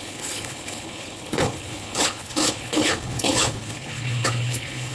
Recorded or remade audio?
remade